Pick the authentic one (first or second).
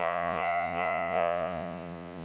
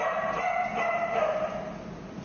second